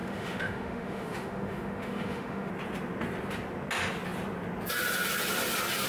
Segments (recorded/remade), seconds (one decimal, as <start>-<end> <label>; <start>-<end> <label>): 0.0-2.5 remade; 2.5-5.9 recorded